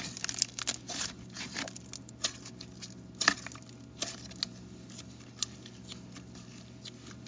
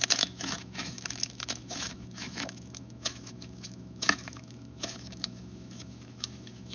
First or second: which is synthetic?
second